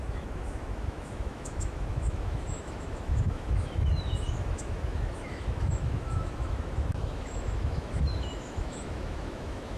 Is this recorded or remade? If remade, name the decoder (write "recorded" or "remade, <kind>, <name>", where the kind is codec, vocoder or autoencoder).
remade, autoencoder, DAC-VAE